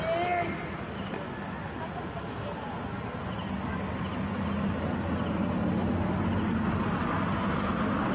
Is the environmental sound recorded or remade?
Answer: recorded